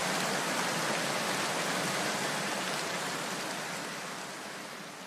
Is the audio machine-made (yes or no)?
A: no